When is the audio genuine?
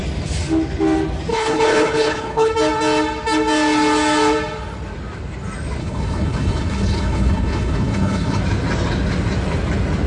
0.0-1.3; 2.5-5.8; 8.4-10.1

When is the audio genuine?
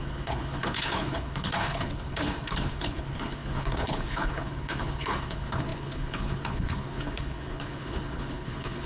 none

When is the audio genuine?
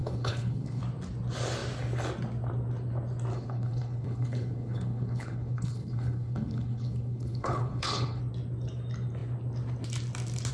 0.8-3.3; 8.2-10.5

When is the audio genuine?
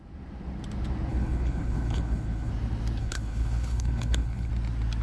0.0-1.1; 2.5-3.0; 4.5-5.0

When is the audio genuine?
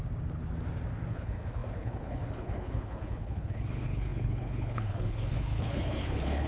0.0-1.1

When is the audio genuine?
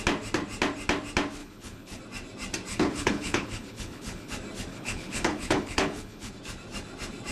0.0-1.4; 2.0-2.7; 4.3-4.7; 6.3-7.3